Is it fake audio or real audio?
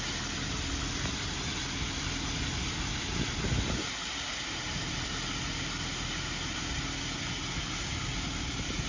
real